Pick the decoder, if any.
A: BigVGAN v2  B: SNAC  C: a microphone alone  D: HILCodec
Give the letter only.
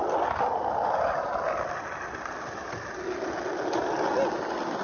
C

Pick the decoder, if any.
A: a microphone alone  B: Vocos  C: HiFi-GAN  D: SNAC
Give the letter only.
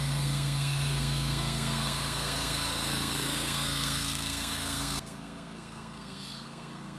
D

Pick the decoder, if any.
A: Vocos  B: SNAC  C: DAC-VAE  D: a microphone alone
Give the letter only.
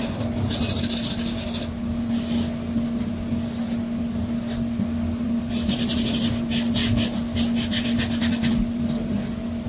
D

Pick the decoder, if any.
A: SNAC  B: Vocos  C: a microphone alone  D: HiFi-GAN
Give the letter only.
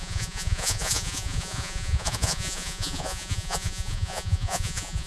B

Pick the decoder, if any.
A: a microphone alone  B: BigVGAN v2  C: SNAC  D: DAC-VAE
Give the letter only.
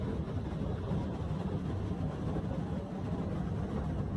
A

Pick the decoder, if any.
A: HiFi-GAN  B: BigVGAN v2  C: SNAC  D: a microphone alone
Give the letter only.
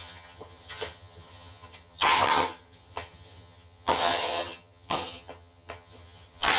A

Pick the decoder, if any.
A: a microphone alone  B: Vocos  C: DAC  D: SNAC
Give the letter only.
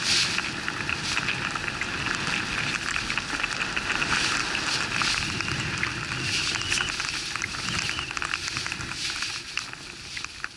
A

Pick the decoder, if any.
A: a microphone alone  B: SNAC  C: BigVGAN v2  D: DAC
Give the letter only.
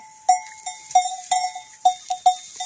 A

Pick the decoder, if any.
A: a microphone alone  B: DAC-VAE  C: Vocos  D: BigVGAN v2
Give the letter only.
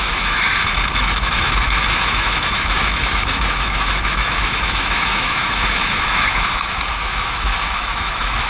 B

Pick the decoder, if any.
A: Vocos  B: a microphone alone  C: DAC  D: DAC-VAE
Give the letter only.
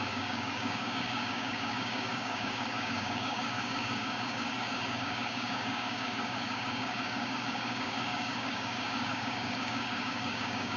C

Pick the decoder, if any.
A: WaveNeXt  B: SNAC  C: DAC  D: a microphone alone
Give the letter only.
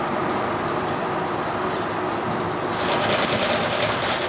D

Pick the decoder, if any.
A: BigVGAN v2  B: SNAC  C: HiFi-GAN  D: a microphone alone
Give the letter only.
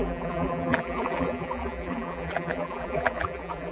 A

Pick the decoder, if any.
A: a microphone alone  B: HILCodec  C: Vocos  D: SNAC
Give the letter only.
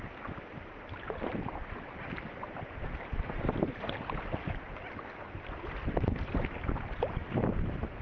A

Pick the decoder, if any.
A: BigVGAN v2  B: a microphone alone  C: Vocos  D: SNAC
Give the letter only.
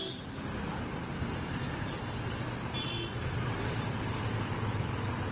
B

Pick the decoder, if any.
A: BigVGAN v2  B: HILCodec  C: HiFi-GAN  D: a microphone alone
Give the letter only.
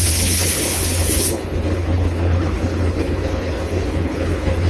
B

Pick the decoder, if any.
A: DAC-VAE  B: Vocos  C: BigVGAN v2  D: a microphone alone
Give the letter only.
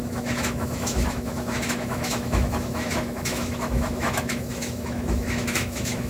A